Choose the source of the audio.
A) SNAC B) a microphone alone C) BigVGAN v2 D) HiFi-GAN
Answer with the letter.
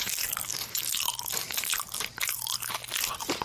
B